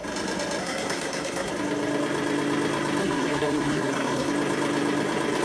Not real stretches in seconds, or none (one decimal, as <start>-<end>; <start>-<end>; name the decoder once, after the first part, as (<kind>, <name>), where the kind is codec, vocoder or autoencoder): 0.6-1.5 (codec, SNAC); 3.0-4.3